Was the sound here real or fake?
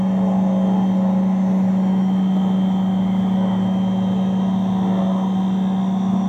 real